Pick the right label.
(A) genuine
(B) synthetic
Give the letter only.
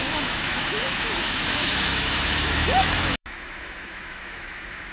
B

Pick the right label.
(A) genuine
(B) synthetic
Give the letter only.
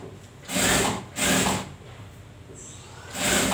A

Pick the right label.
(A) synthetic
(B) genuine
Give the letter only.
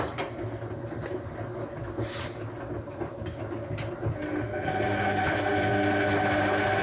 B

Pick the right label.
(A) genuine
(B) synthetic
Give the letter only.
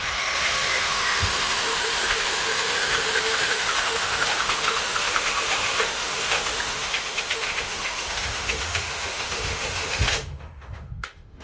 B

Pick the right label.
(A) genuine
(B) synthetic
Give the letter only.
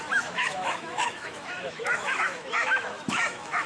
B